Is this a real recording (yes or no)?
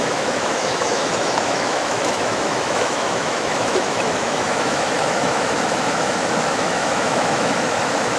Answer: no